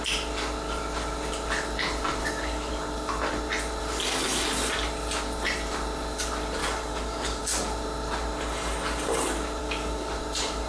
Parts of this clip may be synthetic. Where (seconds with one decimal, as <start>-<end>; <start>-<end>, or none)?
2.2-2.7; 6.6-7.4; 9.6-10.2